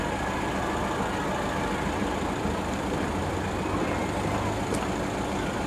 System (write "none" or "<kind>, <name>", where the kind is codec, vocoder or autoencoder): none